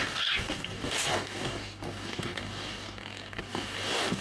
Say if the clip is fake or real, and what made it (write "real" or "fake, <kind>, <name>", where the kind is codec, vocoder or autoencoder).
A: fake, codec, DAC